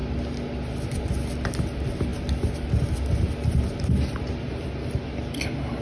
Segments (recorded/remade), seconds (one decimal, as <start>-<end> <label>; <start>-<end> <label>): 0.0-5.8 recorded